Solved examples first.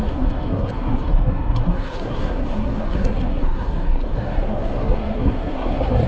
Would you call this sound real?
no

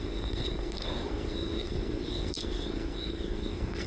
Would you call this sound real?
no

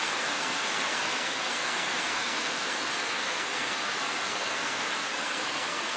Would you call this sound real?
no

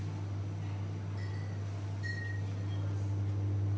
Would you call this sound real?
yes